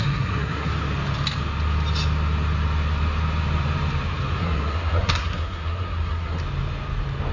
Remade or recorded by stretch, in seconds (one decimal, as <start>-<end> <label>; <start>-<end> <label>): 0.0-0.7 remade; 0.7-4.4 recorded; 4.4-6.4 remade; 6.4-7.3 recorded